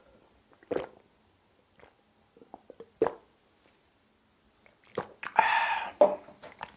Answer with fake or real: real